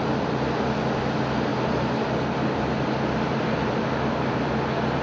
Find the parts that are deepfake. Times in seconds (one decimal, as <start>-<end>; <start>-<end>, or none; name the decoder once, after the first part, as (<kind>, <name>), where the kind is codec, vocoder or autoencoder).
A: 1.5-4.5 (vocoder, BigVGAN v2)